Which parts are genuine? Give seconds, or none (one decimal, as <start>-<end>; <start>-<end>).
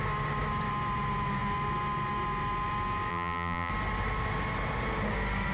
0.0-3.1; 3.7-5.5